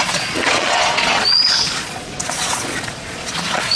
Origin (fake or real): fake